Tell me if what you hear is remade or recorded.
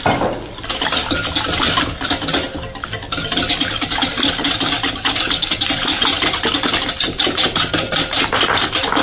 recorded